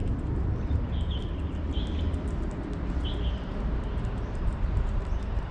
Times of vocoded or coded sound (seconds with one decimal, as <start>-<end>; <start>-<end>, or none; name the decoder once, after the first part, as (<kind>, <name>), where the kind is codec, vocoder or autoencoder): 3.3-5.5 (vocoder, BigVGAN v2)